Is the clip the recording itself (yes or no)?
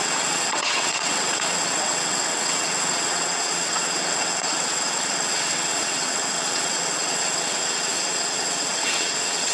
no